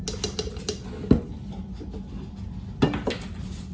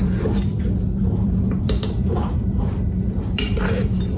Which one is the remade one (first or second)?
second